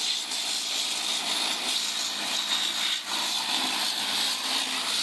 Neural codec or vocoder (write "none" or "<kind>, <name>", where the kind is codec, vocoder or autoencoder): none